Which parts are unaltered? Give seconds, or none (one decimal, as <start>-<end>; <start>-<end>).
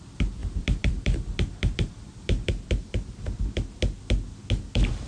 0.0-0.4; 2.5-5.1